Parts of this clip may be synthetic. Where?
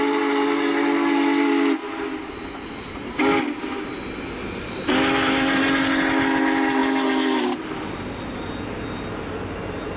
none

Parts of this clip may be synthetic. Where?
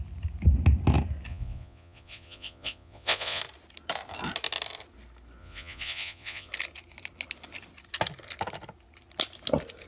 1.3-3.4 (vocoder, Vocos); 5.4-6.5